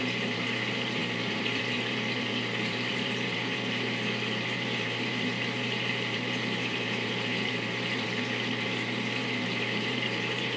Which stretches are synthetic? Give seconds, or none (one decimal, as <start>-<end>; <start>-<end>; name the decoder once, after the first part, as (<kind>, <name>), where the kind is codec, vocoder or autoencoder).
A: 0.0-10.6 (vocoder, BigVGAN v2)